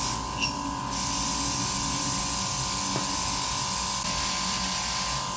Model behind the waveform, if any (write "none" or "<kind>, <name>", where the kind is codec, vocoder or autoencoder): none